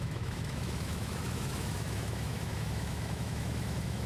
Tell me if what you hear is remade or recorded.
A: remade